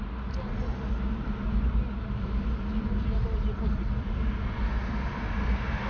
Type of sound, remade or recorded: recorded